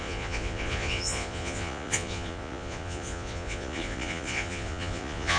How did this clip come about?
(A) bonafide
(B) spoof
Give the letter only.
B